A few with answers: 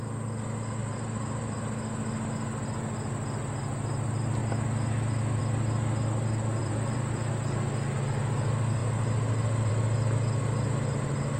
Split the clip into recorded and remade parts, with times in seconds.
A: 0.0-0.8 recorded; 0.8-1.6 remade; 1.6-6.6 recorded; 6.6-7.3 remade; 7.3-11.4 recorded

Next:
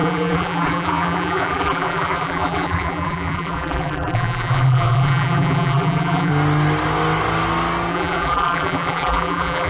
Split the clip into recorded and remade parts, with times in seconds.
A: 0.0-6.3 remade; 6.3-7.9 recorded; 7.9-9.7 remade

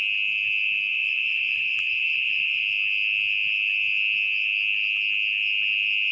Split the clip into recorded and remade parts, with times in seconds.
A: 0.0-0.9 recorded; 0.9-2.6 remade; 2.6-6.1 recorded